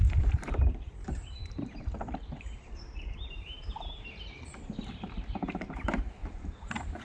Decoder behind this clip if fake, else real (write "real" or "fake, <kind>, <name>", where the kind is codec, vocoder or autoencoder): fake, vocoder, BigVGAN v2